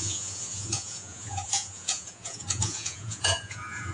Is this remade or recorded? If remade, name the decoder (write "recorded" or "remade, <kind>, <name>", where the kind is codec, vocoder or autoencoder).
remade, vocoder, Vocos